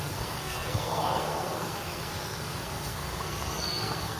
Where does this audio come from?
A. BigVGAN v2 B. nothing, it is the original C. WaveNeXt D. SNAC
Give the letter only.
D